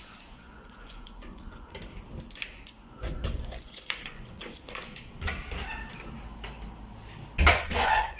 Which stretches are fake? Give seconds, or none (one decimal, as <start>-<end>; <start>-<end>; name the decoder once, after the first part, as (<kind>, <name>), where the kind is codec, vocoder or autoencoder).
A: 0.0-1.8 (vocoder, Vocos); 2.5-4.8; 7.5-8.2